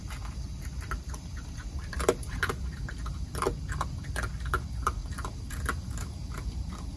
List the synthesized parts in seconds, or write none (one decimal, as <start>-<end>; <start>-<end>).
1.6-2.9